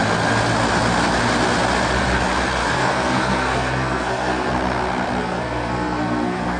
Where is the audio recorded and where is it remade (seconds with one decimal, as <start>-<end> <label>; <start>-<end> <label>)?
0.0-2.6 recorded; 2.6-4.5 remade; 4.5-5.2 recorded; 5.2-6.6 remade

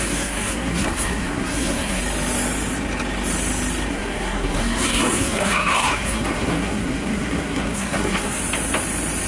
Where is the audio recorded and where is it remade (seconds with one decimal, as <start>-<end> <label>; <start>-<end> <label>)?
0.0-2.0 remade; 2.0-3.9 recorded; 3.9-8.4 remade; 8.4-9.3 recorded

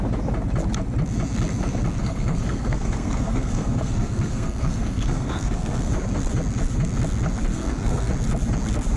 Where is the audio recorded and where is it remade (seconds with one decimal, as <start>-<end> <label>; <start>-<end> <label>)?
0.0-2.0 recorded; 2.0-5.9 remade; 5.9-7.5 recorded; 7.5-8.1 remade; 8.1-9.0 recorded

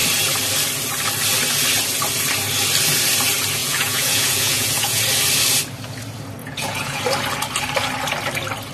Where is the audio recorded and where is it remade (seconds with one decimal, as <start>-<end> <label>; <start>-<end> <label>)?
0.0-3.6 recorded; 3.6-5.0 remade; 5.0-6.4 recorded; 6.4-7.0 remade; 7.0-8.7 recorded

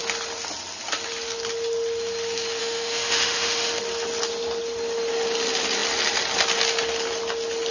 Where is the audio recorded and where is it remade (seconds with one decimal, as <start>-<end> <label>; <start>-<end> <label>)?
0.0-2.6 recorded; 2.6-3.8 remade; 3.8-7.7 recorded

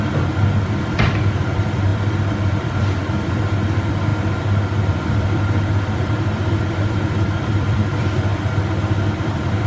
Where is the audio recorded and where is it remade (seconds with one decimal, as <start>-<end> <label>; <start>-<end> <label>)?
0.0-4.1 remade; 4.1-5.1 recorded; 5.1-8.3 remade; 8.3-9.0 recorded; 9.0-9.7 remade

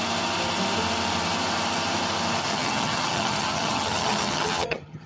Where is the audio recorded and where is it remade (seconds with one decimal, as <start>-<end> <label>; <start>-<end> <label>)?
0.0-2.5 recorded; 2.5-5.1 remade

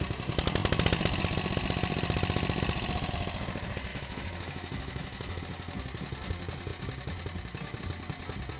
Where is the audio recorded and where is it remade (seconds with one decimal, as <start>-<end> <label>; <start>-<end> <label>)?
0.0-3.9 recorded; 3.9-5.4 remade; 5.4-8.6 recorded